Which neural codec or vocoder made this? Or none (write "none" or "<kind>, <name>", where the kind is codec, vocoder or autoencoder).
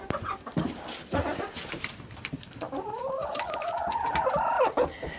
vocoder, BigVGAN v2